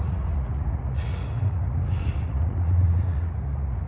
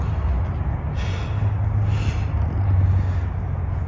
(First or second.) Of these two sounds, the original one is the second